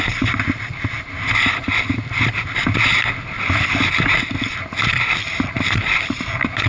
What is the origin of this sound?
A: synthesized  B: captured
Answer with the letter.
B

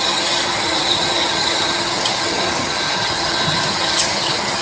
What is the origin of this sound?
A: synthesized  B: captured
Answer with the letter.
A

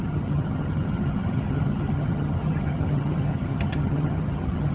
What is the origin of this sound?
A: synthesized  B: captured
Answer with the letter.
A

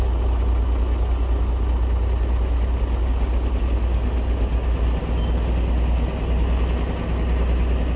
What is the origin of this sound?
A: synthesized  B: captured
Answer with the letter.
B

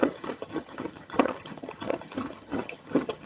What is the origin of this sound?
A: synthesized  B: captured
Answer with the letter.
A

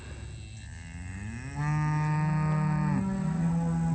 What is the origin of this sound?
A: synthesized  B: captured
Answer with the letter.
B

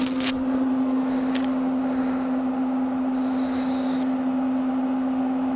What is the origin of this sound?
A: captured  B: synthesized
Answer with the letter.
A